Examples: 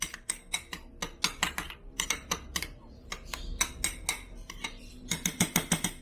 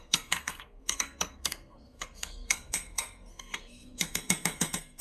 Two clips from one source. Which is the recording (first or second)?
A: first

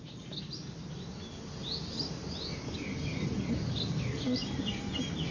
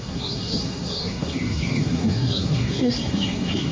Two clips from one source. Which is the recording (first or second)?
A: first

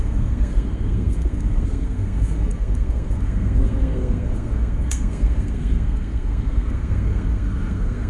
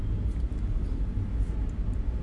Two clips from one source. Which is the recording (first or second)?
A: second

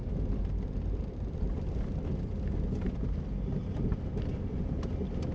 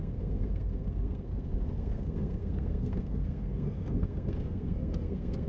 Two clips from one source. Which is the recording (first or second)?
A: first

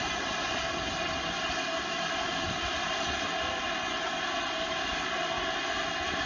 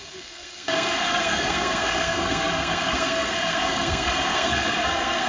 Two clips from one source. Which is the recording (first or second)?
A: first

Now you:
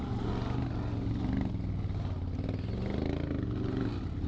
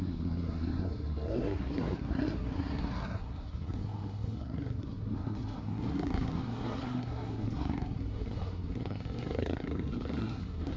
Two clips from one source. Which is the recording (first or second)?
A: first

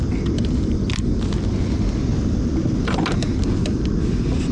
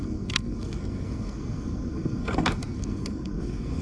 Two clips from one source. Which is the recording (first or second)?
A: first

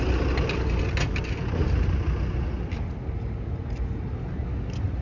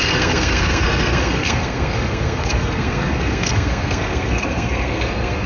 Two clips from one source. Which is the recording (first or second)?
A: first